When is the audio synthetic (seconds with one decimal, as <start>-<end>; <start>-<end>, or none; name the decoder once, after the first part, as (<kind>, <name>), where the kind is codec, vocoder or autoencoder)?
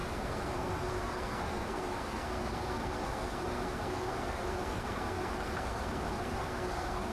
0.0-7.1 (codec, SNAC)